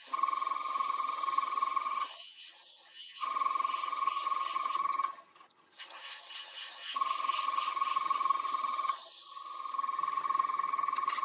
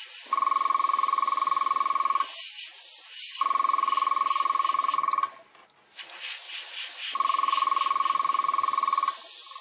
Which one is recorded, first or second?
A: second